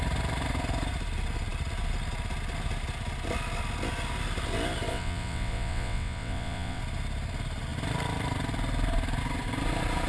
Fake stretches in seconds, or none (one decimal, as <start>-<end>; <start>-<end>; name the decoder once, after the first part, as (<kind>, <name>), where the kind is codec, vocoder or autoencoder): 4.9-6.8 (vocoder, WaveNeXt)